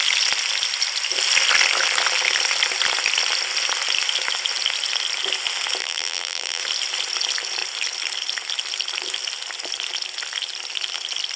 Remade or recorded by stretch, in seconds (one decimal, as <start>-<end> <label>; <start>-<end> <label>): 0.0-5.8 recorded; 5.8-6.6 remade; 6.6-11.4 recorded